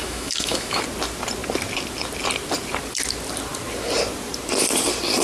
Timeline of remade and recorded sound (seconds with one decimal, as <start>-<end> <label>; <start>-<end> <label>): 0.0-0.8 remade; 0.8-5.2 recorded